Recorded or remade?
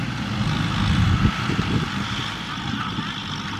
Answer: recorded